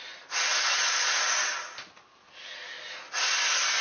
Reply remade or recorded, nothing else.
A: recorded